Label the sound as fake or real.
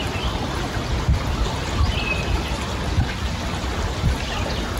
real